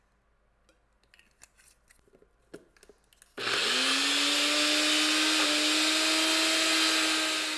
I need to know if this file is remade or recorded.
recorded